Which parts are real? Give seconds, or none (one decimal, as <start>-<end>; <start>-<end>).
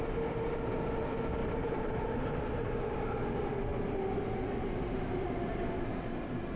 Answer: 0.0-1.4; 2.3-6.6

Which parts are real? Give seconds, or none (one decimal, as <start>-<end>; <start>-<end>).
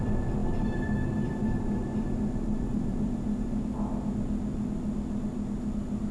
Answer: 0.0-0.4; 4.1-6.1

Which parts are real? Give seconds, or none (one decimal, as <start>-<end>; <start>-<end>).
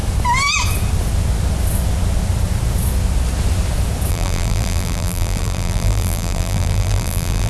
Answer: 0.0-4.1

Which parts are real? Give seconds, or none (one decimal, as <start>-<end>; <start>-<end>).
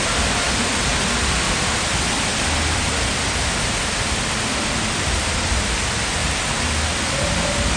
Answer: 6.2-7.8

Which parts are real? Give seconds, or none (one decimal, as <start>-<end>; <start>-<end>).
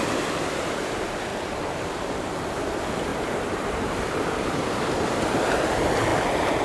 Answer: 0.0-1.3; 2.4-3.1; 5.1-6.6